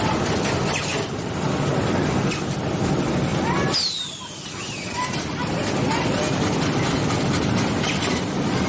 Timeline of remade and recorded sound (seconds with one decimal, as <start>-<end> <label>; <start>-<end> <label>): 0.0-8.7 recorded